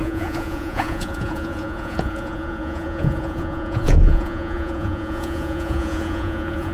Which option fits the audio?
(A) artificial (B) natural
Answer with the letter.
A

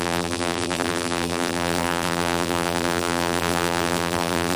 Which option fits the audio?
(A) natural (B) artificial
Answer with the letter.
B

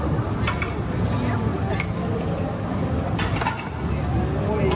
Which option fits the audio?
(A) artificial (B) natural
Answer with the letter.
B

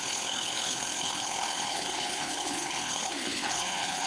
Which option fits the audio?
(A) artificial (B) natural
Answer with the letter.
A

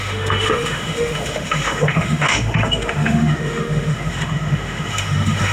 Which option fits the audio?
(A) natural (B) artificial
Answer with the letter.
B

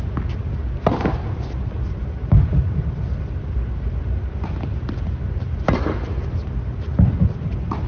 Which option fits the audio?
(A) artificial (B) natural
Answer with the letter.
B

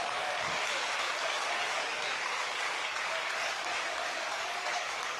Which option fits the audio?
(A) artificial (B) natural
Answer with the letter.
A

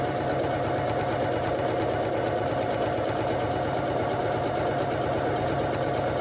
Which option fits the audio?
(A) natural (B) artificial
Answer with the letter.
A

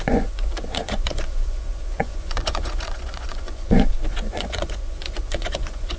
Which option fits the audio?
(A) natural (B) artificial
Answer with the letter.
B